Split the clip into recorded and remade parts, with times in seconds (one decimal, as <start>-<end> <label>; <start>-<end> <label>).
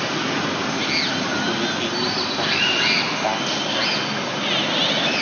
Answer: 0.0-5.2 recorded